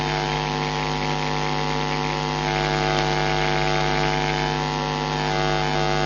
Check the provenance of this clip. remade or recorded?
recorded